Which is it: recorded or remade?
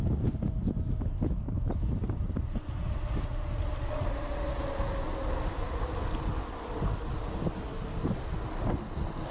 recorded